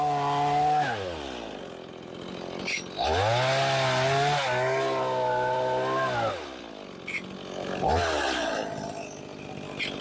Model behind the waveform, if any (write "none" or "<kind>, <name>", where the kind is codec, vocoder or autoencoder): none